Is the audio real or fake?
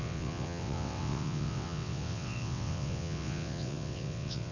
fake